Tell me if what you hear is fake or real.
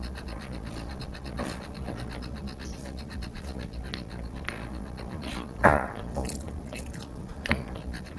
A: fake